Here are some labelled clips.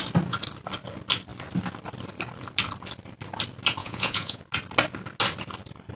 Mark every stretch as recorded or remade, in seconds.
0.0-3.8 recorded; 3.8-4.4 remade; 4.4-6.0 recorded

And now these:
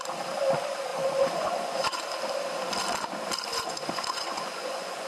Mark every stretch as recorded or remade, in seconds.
0.0-0.9 recorded; 0.9-2.0 remade; 2.0-3.5 recorded; 3.5-5.1 remade

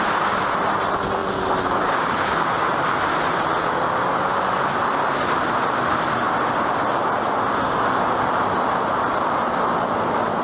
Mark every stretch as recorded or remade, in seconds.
0.0-10.4 recorded